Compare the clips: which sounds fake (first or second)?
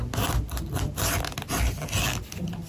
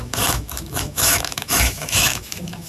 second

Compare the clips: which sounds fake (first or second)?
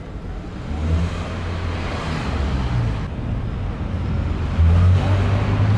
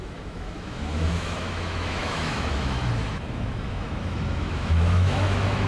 second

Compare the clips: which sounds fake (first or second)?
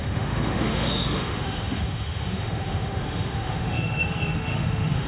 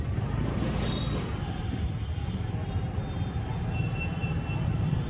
first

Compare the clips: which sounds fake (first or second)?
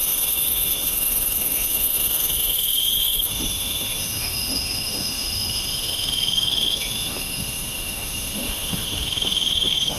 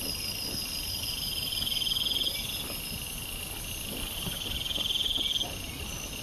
first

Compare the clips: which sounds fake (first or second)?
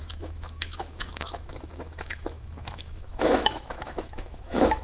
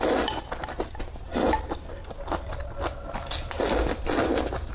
first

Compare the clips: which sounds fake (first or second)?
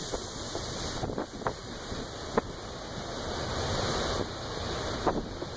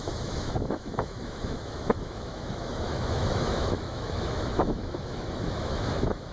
second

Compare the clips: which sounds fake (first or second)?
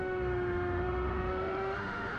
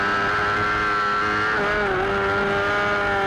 first